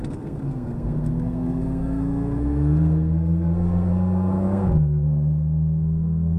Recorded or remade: remade